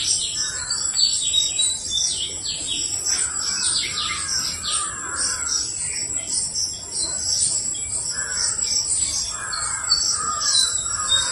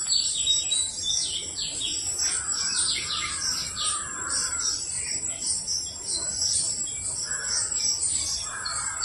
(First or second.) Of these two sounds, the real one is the first